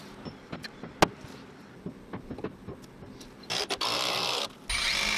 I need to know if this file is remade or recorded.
recorded